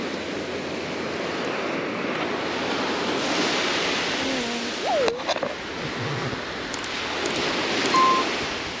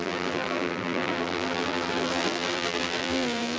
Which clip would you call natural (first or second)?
first